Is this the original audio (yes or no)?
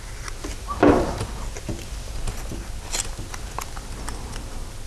yes